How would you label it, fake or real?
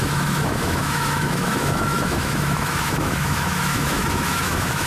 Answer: fake